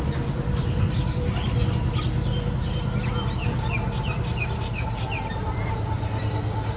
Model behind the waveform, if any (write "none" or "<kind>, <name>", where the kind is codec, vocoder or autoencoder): none